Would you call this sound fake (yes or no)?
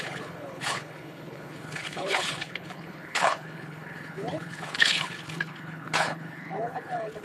yes